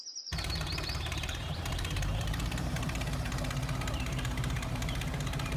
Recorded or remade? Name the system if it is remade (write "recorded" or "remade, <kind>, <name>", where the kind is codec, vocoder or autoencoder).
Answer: remade, vocoder, BigVGAN v2